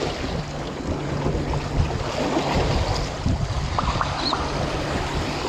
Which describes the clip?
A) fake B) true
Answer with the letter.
B